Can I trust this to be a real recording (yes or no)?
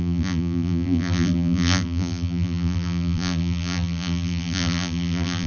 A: no